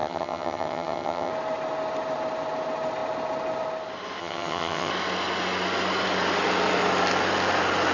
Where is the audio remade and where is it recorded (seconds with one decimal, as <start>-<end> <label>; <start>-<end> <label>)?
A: 0.0-1.3 remade; 1.3-4.2 recorded; 4.2-4.9 remade; 4.9-7.9 recorded